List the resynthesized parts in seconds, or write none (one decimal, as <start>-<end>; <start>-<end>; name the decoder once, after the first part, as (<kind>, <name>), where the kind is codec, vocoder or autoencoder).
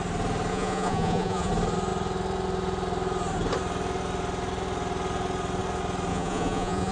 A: 0.5-1.5 (vocoder, Vocos); 6.1-6.9